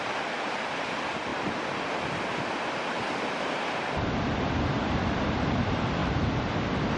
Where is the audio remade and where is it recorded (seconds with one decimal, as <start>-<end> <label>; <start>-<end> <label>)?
0.0-6.0 remade; 6.0-7.0 recorded